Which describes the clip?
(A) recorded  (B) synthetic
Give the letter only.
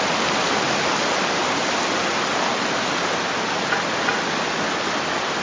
A